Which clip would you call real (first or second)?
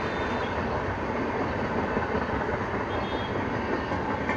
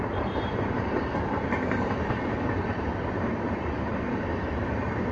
first